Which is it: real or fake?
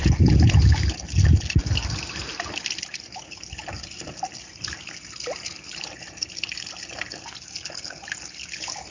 real